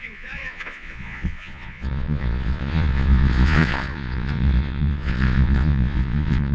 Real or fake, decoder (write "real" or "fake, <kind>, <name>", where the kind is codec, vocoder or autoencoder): fake, vocoder, Vocos